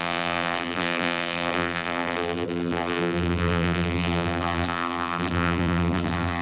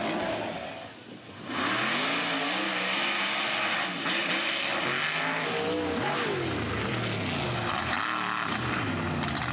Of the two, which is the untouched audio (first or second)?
second